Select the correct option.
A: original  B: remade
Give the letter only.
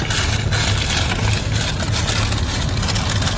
A